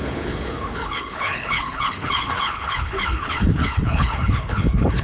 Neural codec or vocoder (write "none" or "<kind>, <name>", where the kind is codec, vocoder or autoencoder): codec, HILCodec